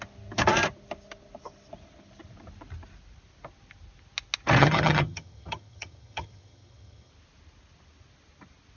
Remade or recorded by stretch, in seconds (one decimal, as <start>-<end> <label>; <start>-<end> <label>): 0.0-4.6 recorded; 4.6-7.1 remade; 7.1-8.8 recorded